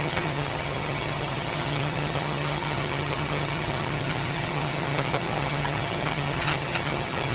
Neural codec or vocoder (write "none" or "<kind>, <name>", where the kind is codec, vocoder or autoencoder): vocoder, HiFi-GAN